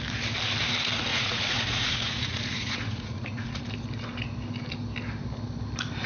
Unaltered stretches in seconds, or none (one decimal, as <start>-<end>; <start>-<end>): 0.0-1.1; 3.6-6.1